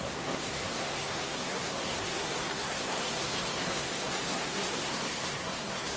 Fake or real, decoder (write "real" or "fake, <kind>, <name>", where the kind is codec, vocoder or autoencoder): fake, codec, SNAC